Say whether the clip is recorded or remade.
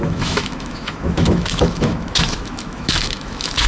remade